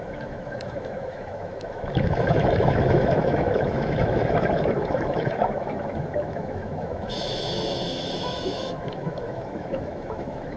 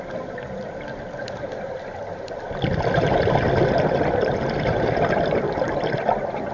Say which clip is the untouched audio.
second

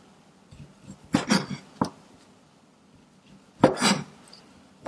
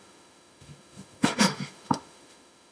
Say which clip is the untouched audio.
first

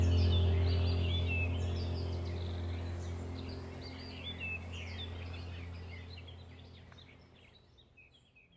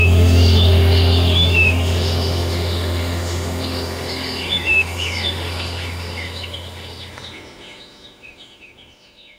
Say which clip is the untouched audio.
first